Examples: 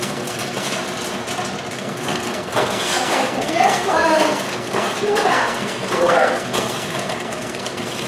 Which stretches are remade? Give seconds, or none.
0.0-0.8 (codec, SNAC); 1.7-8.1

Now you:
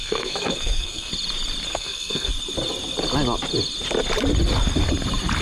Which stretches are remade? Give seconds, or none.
0.0-1.1 (codec, SNAC); 1.7-2.3

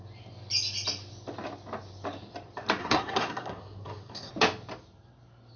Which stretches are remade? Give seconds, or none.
2.8-4.3 (codec, SNAC)

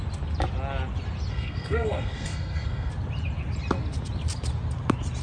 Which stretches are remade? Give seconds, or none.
1.3-2.9 (codec, SNAC)

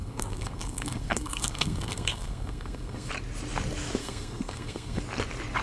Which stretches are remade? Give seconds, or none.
0.0-3.1 (codec, SNAC); 4.0-5.0